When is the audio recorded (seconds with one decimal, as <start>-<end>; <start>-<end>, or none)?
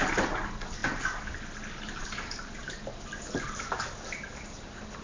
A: 0.8-1.7